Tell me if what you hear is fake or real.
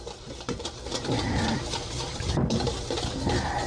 fake